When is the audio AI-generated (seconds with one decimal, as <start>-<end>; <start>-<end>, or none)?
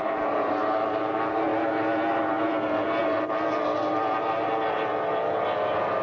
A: none